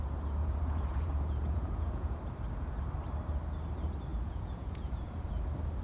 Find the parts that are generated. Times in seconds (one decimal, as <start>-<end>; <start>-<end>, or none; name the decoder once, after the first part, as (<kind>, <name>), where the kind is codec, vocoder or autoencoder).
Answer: 0.4-2.2 (vocoder, Vocos); 4.1-5.3